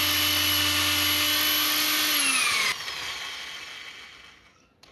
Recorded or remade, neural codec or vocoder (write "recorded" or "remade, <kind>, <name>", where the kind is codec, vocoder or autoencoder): recorded